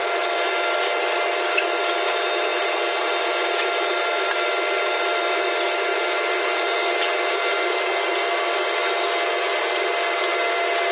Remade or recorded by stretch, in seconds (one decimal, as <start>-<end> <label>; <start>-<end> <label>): 0.0-10.9 recorded